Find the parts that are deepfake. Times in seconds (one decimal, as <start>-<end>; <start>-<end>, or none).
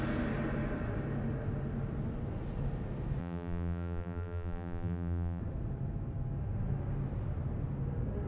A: 3.2-5.4